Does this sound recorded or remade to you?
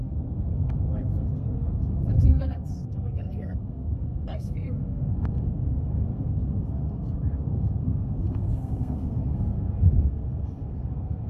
remade